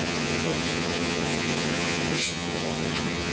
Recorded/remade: remade